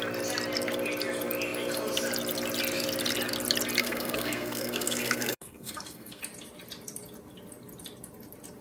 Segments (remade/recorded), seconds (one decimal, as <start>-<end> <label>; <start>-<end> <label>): 0.0-3.8 recorded; 3.8-6.2 remade; 6.2-8.6 recorded